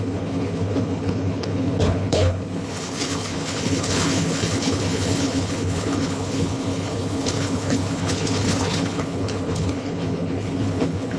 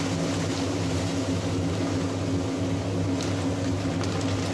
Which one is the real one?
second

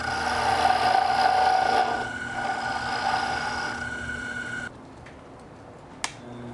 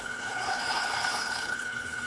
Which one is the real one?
first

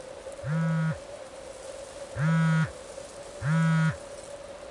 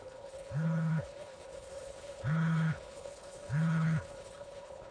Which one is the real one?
first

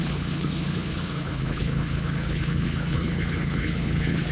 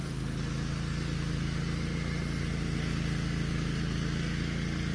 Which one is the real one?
second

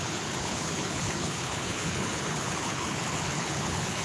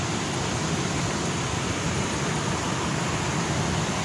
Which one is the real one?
second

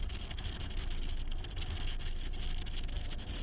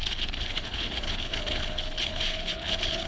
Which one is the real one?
first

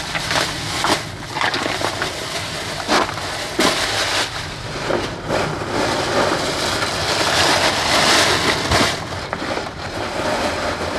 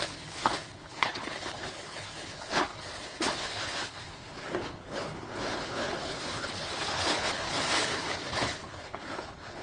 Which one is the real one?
first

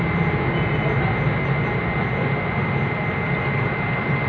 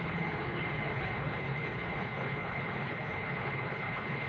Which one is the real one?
first